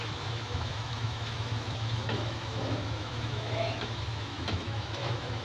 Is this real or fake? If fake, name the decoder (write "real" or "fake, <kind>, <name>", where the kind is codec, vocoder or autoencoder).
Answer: fake, autoencoder, DAC-VAE